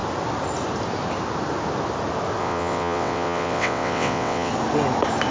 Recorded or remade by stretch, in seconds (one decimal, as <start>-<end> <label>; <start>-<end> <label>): 0.0-2.4 recorded; 2.4-4.5 remade; 4.5-5.3 recorded